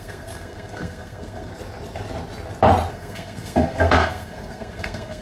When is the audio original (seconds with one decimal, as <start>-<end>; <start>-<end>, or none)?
1.5-2.9